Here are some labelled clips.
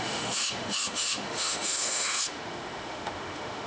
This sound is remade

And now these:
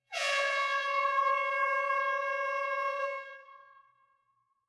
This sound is remade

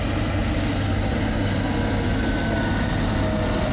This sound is recorded